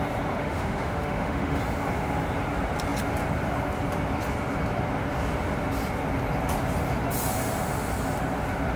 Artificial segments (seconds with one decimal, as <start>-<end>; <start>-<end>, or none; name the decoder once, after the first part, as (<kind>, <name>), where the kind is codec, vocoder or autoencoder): 0.4-1.6 (autoencoder, DAC-VAE)